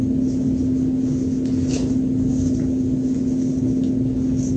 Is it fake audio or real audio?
real